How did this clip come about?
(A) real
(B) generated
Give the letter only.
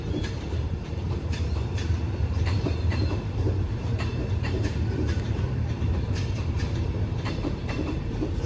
B